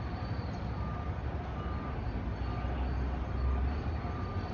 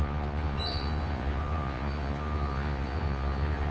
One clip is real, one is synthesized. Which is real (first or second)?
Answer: first